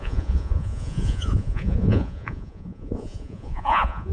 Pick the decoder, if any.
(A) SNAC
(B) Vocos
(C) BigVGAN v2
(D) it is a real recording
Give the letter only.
B